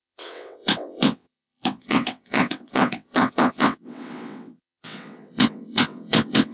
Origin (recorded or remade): remade